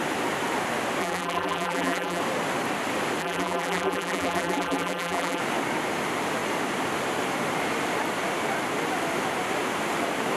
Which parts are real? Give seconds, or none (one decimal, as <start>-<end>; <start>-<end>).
0.0-1.0; 2.2-3.2; 5.4-10.4